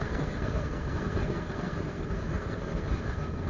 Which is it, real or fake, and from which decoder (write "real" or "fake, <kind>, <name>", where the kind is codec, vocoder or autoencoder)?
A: fake, codec, SNAC